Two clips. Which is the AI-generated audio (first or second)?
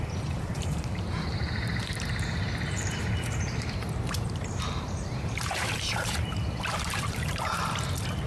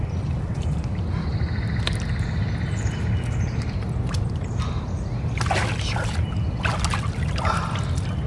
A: first